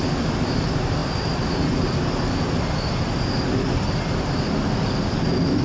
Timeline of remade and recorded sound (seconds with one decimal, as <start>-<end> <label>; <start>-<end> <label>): 0.0-5.6 recorded